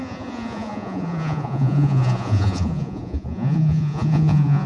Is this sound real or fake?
fake